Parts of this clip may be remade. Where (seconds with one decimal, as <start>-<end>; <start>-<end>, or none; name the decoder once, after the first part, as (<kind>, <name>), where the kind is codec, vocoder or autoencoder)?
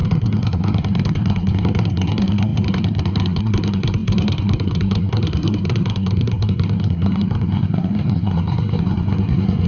0.0-9.7 (codec, SNAC)